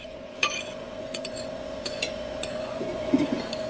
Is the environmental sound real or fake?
fake